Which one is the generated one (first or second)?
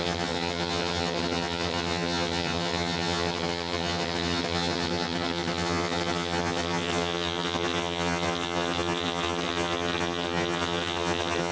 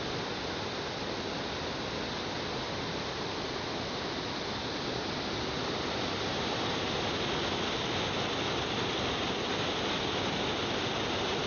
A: first